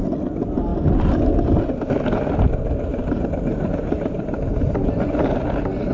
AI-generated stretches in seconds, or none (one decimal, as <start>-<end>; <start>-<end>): 2.9-5.9